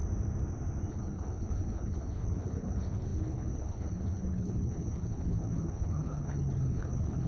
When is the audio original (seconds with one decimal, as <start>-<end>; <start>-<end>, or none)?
0.0-0.9

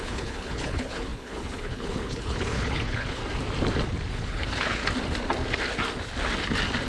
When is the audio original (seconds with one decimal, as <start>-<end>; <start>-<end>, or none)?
3.2-4.1; 4.8-6.9

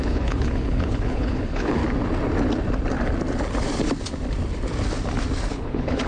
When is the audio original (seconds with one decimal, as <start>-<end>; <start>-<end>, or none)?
1.8-5.5

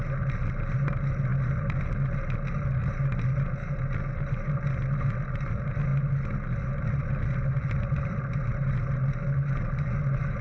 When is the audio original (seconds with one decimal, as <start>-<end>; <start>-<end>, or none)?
0.0-10.4